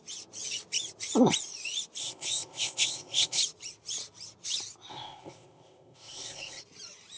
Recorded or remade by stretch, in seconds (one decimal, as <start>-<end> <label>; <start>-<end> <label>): 0.0-2.0 recorded; 2.0-3.4 remade; 3.4-4.9 recorded; 4.9-6.6 remade; 6.6-7.2 recorded